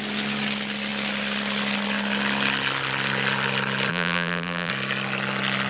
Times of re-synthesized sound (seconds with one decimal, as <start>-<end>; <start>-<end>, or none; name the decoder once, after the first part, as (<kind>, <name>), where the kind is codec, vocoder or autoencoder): 3.9-4.7 (vocoder, BigVGAN v2)